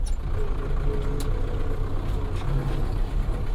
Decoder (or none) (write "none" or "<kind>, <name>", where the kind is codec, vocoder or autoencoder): none